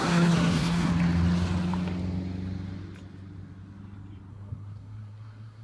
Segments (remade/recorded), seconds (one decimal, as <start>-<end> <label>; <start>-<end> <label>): 0.0-0.9 remade; 0.9-4.3 recorded; 4.3-5.6 remade